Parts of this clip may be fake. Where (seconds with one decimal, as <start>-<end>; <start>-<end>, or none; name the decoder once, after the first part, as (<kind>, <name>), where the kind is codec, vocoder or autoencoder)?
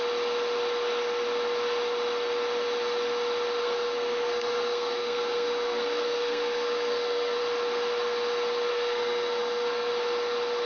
3.6-7.4 (codec, SNAC); 8.7-9.9